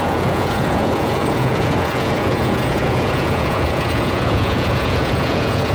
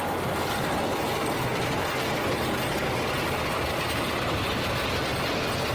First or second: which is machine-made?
first